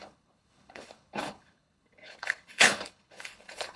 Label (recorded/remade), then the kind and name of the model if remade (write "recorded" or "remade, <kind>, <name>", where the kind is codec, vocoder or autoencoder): remade, codec, HILCodec